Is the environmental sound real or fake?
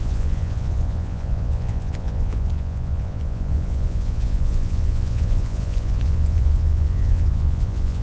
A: fake